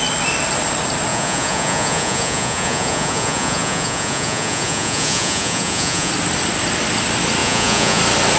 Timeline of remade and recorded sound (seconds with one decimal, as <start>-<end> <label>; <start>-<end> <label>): 0.0-1.1 recorded; 1.1-6.1 remade; 6.1-7.4 recorded; 7.4-8.0 remade; 8.0-8.4 recorded